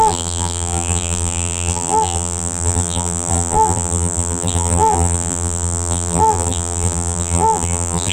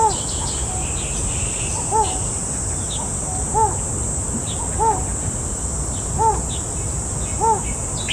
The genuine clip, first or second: second